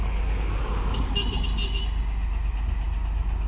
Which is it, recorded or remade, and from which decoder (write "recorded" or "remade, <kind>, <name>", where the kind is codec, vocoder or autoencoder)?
recorded